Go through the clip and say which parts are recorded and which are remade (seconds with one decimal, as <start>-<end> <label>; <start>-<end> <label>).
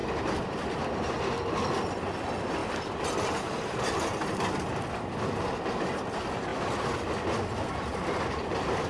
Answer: 0.0-0.8 remade; 0.8-2.6 recorded; 2.6-5.7 remade; 5.7-6.5 recorded; 6.5-7.5 remade; 7.5-7.9 recorded; 7.9-8.9 remade